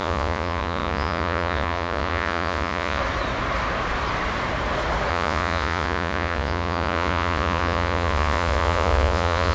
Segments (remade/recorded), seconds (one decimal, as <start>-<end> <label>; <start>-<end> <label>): 0.0-3.0 remade; 3.0-5.1 recorded; 5.1-9.5 remade